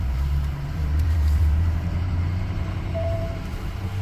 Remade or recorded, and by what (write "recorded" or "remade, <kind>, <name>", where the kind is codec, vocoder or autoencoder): remade, vocoder, BigVGAN v2